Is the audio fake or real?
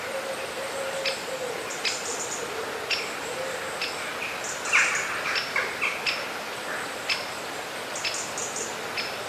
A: real